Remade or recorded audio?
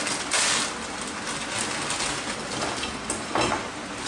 recorded